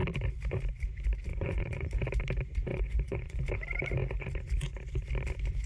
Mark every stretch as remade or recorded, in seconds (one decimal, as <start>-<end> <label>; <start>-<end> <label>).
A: 0.0-1.3 recorded; 1.3-1.9 remade; 1.9-2.7 recorded; 2.7-3.4 remade; 3.4-5.7 recorded